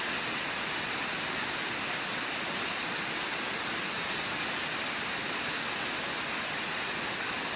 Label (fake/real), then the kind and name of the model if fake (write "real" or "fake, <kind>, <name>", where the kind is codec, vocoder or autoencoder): real